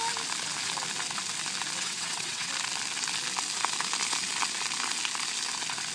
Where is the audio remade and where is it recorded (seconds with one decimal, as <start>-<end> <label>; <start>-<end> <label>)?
0.0-1.8 recorded; 1.8-2.5 remade; 2.5-5.9 recorded